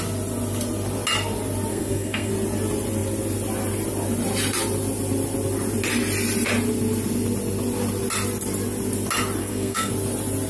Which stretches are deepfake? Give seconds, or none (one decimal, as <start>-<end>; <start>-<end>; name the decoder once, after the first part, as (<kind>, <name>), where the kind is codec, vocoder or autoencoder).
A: 1.7-2.3 (codec, SNAC); 9.4-9.9